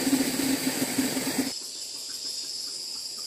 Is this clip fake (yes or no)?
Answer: no